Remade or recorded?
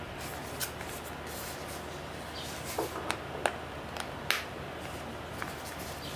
recorded